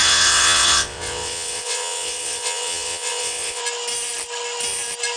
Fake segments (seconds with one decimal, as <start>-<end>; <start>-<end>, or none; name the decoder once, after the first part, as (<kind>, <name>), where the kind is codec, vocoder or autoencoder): 0.0-3.6 (vocoder, WaveNeXt)